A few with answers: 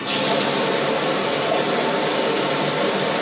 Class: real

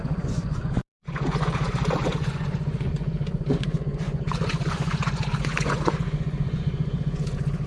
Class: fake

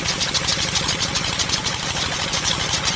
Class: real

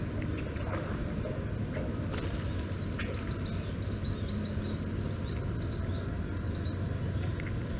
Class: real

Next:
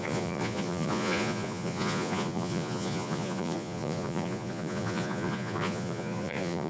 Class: fake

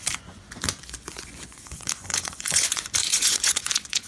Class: fake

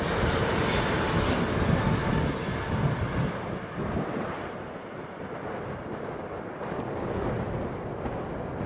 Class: real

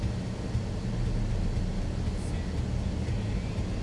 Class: real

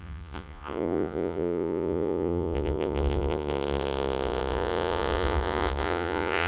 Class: fake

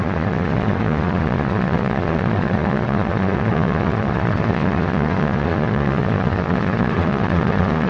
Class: fake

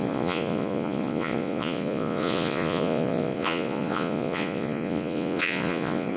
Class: fake